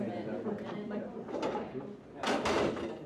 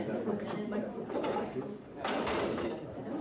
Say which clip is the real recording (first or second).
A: first